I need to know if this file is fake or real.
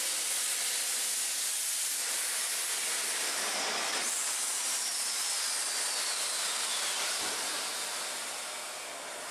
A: real